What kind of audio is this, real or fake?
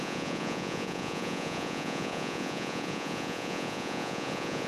fake